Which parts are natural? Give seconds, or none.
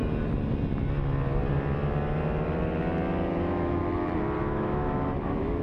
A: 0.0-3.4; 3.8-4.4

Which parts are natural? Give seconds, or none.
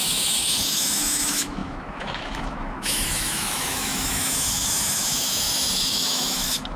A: none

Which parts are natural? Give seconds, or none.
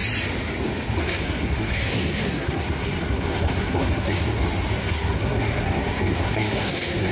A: 0.0-1.0; 4.2-4.8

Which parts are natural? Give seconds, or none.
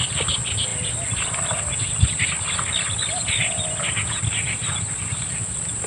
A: 0.0-5.9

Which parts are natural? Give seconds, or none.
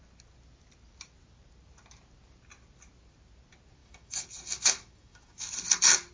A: 0.0-3.8; 5.5-6.1